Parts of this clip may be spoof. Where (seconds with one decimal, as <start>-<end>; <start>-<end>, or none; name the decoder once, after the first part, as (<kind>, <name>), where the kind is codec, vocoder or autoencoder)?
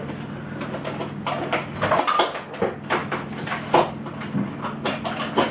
none